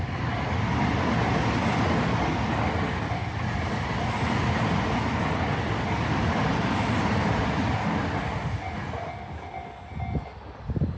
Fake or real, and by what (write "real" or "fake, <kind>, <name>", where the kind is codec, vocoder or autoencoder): real